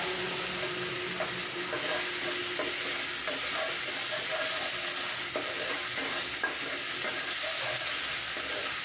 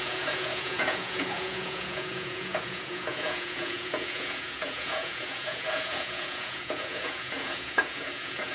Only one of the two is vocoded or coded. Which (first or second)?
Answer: second